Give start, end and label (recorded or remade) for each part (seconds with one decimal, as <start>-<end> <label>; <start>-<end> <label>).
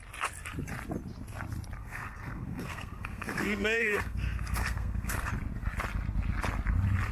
0.0-1.8 recorded; 1.8-5.3 remade; 5.3-7.1 recorded